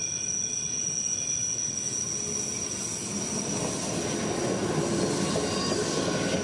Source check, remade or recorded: recorded